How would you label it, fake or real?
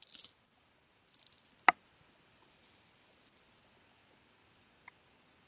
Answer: real